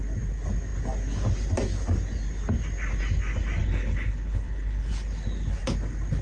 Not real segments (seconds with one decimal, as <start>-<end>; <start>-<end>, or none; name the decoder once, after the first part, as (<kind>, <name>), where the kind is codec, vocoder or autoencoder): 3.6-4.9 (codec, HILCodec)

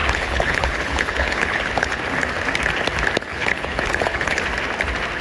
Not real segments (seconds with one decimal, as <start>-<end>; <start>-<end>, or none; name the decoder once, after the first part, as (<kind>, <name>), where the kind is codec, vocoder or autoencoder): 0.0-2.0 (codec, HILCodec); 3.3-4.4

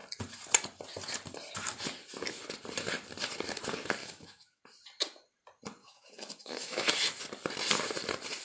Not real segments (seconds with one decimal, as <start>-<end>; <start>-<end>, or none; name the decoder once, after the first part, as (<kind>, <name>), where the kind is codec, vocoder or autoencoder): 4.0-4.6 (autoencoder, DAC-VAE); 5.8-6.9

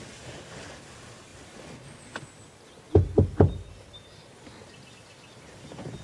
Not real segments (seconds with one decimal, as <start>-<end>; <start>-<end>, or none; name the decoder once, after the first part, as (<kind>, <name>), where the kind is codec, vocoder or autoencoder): none